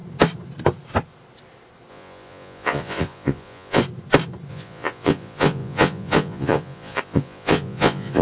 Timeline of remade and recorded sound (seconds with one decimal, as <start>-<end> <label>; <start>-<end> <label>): 0.0-1.9 recorded; 1.9-3.8 remade; 3.8-4.5 recorded; 4.5-8.2 remade